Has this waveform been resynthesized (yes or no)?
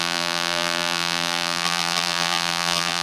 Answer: yes